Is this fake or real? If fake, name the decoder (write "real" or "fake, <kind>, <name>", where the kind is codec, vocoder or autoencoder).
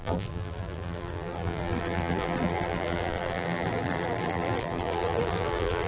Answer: fake, vocoder, BigVGAN v2